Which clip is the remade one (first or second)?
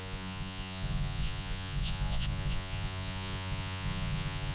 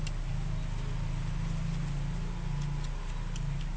first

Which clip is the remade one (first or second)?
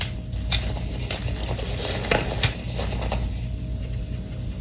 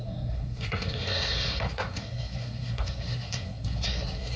second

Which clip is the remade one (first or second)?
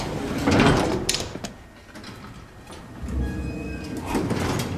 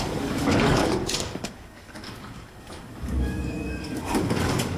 second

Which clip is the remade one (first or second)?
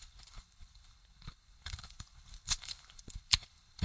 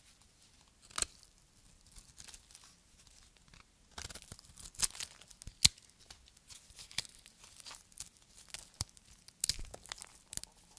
first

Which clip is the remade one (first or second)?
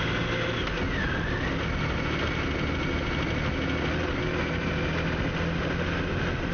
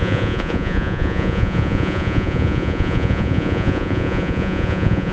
second